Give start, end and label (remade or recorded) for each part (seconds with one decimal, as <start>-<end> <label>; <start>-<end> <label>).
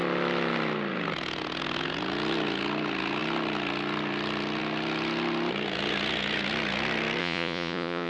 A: 0.0-7.2 recorded; 7.2-8.1 remade